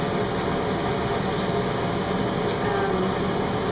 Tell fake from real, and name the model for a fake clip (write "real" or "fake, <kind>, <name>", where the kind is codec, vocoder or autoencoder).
real